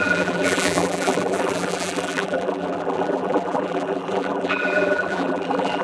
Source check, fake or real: fake